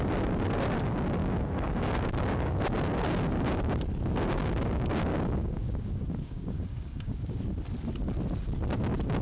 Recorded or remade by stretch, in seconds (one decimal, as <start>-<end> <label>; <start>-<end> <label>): 0.0-1.2 recorded; 1.2-2.6 remade; 2.6-5.1 recorded; 5.1-7.4 remade; 7.4-9.2 recorded